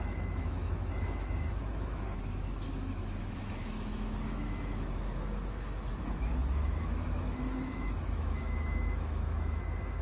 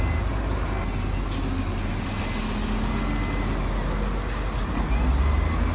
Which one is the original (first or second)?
second